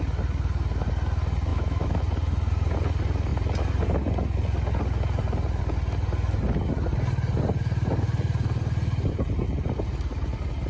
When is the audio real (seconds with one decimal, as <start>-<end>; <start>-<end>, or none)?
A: 0.0-1.5; 2.0-10.7